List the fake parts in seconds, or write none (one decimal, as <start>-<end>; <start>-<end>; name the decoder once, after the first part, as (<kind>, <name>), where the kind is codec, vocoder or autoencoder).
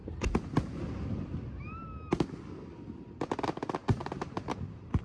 3.8-5.0 (vocoder, BigVGAN v2)